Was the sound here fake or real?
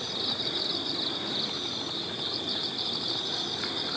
real